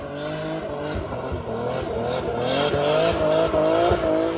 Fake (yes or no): no